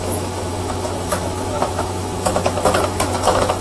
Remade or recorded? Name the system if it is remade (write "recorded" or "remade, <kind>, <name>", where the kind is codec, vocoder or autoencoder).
remade, autoencoder, DAC-VAE